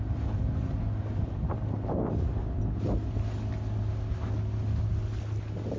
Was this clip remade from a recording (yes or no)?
no